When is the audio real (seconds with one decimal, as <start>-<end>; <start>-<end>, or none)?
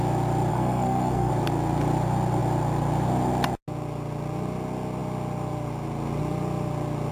0.0-0.5; 1.3-7.1